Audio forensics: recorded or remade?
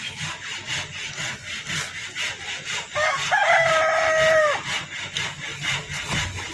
recorded